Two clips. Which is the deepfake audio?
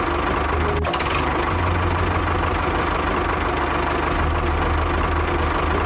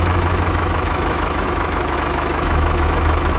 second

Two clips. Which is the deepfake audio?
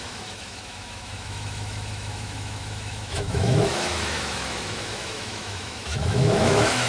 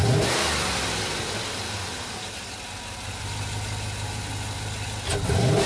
first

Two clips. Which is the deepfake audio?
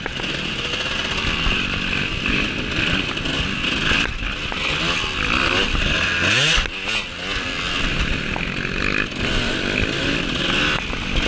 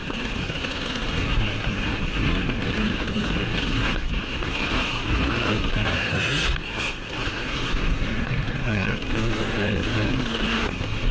second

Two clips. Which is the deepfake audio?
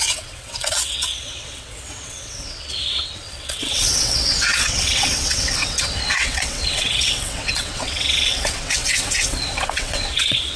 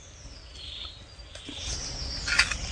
first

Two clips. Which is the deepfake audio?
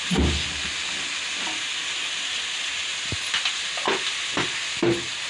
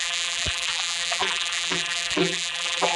second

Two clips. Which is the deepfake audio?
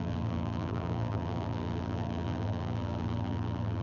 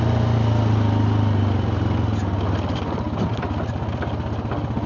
first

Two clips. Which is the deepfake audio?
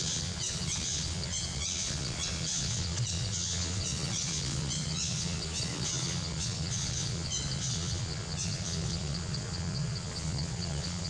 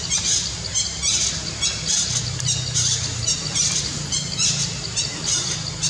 first